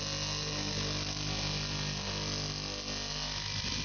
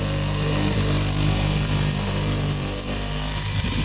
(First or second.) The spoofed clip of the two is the second